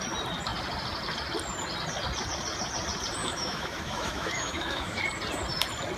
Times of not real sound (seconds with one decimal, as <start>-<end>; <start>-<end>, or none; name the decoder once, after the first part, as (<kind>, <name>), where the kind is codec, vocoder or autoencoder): 3.2-5.0 (autoencoder, DAC-VAE)